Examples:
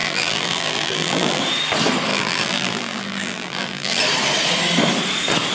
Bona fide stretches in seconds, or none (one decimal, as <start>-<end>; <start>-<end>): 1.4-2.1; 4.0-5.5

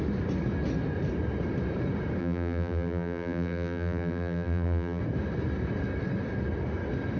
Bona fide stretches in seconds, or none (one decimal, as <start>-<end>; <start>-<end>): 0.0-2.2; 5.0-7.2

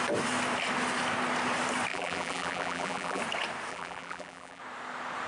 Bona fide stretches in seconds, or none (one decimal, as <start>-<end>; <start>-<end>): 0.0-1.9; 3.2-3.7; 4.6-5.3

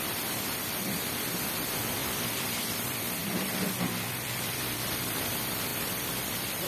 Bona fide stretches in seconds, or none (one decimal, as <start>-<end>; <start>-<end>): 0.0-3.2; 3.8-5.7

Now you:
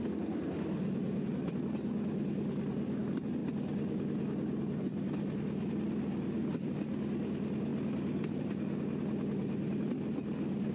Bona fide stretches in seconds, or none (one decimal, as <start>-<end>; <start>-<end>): 0.0-10.7

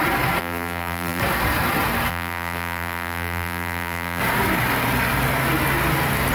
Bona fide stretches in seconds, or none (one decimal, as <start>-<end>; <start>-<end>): 0.0-0.4; 1.2-2.1; 4.2-6.3